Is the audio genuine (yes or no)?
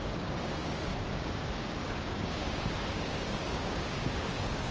no